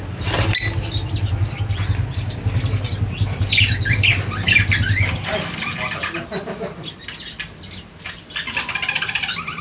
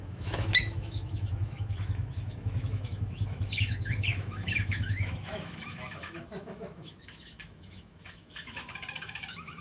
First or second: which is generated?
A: second